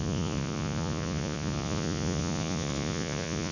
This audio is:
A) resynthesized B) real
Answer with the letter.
A